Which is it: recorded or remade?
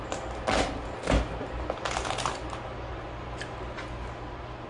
recorded